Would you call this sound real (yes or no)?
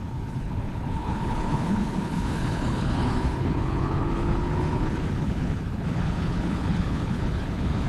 no